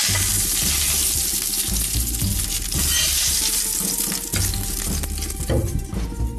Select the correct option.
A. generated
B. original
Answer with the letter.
B